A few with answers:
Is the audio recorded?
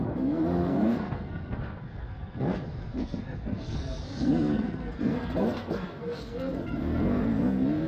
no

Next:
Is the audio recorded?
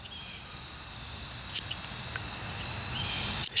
yes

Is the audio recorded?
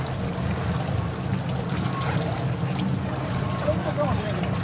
yes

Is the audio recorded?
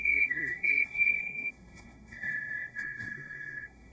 no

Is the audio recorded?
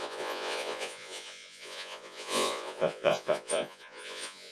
no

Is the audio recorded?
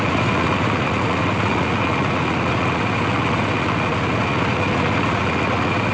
no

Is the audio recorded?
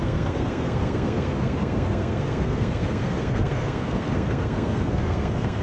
no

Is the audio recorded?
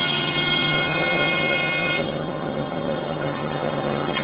no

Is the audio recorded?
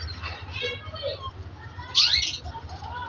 yes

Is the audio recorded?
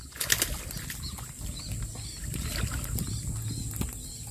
yes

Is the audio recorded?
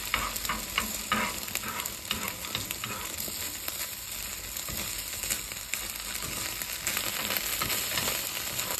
yes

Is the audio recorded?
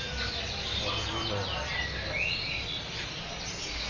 yes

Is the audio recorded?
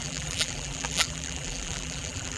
no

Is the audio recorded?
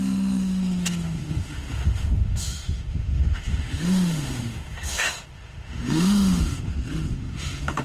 no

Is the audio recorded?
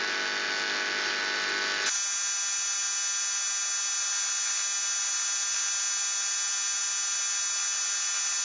yes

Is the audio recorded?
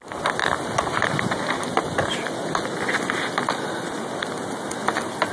yes